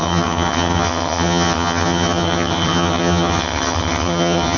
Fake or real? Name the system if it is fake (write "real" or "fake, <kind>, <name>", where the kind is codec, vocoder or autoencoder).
fake, vocoder, HiFi-GAN